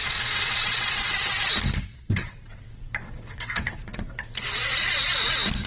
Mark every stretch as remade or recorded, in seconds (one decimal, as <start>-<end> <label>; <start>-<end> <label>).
0.0-1.5 remade; 1.5-1.9 recorded; 1.9-4.9 remade; 4.9-5.7 recorded